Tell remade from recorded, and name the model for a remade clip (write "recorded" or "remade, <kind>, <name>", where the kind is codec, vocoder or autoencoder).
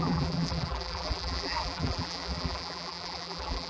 remade, vocoder, BigVGAN v2